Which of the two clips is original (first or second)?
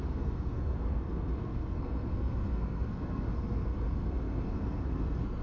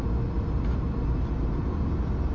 second